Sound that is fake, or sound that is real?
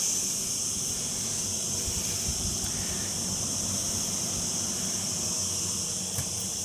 fake